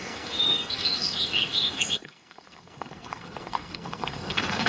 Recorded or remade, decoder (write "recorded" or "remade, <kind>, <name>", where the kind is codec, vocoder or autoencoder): remade, codec, SNAC